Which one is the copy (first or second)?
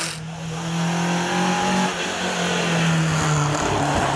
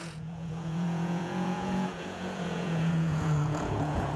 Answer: second